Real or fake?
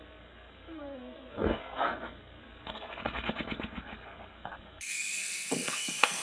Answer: fake